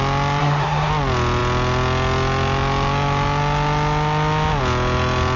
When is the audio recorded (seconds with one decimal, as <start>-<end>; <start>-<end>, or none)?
0.0-0.4; 0.9-5.4